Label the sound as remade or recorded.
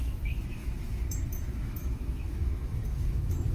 remade